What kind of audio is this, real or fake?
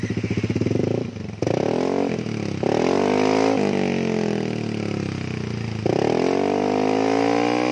real